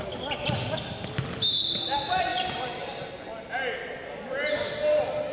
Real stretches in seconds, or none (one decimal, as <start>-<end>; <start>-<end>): 0.0-2.3; 3.1-5.3